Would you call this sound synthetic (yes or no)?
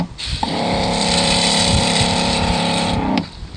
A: yes